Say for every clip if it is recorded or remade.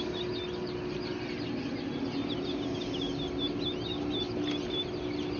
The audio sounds recorded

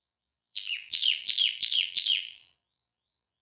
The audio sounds remade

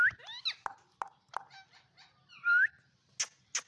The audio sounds recorded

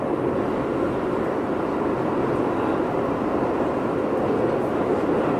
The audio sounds recorded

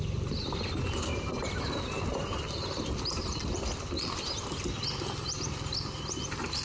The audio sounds remade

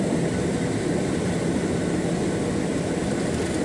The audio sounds recorded